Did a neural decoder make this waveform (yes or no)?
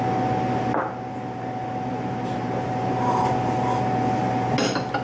no